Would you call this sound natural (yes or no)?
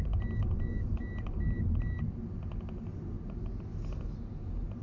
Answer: yes